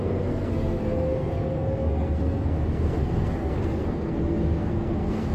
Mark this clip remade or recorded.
remade